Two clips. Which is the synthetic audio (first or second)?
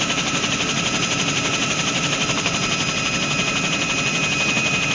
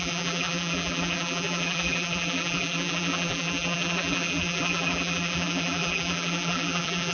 second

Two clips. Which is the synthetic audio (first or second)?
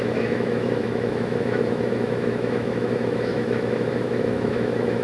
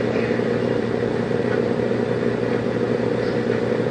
first